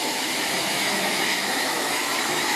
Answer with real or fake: fake